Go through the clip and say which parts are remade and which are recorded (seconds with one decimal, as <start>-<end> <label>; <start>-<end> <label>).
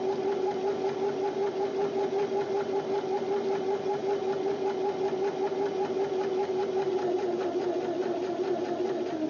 0.0-9.3 recorded